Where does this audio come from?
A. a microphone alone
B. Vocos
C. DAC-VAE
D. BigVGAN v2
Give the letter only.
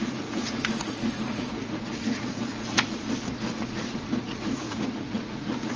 B